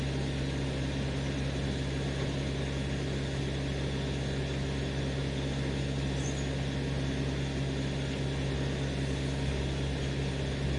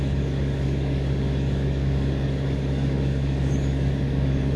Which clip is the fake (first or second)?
second